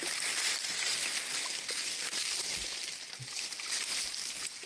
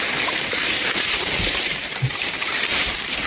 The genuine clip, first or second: first